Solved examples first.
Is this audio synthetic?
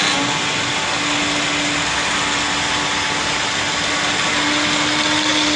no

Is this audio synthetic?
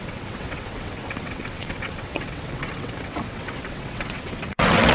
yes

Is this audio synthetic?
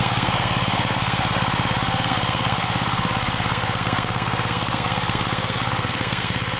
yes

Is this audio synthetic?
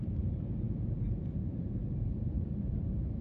yes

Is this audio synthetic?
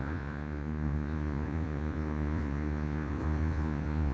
yes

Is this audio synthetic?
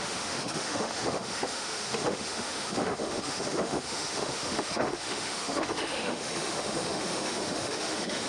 yes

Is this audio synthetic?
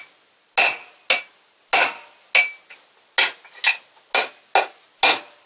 no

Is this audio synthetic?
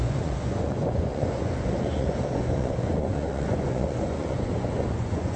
yes